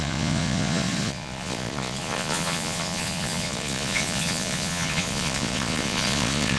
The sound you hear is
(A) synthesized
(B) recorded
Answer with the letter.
A